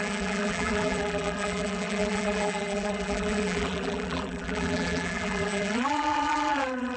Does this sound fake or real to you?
fake